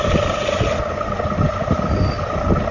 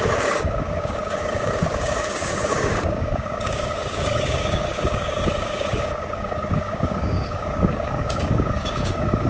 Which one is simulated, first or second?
second